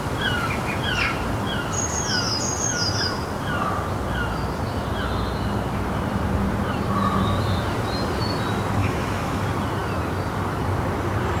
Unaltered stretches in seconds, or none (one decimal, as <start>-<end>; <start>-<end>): 0.0-8.8; 9.4-11.4